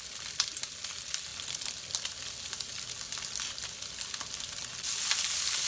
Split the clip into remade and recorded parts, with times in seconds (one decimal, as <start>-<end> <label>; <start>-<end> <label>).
0.0-5.7 recorded